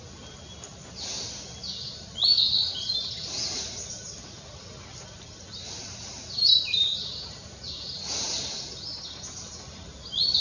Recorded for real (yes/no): yes